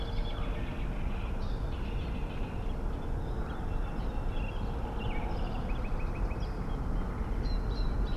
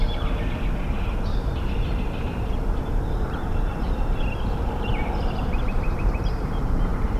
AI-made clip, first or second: second